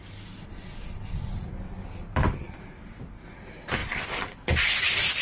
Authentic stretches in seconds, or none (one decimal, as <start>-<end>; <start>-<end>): 0.0-5.2

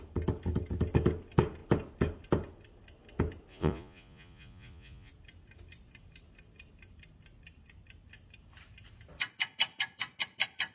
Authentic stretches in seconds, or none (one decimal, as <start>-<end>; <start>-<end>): 0.0-3.5; 5.1-10.7

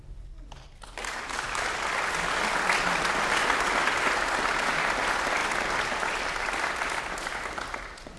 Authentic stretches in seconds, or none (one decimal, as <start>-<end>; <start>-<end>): 0.0-8.2

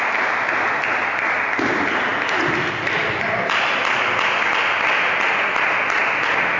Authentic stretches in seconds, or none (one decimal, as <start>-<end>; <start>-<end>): 0.0-6.6

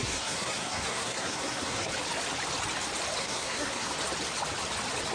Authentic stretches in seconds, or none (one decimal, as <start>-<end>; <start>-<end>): 1.9-3.2; 3.9-5.1